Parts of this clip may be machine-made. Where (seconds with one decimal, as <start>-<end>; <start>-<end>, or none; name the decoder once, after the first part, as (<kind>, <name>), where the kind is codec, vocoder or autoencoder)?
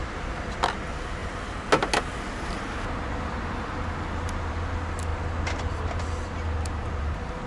none